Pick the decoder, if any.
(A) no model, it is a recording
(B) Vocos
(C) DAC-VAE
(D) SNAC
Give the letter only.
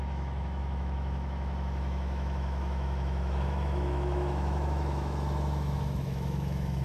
C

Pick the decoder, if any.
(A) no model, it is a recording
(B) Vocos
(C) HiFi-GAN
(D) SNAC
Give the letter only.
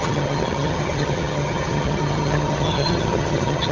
C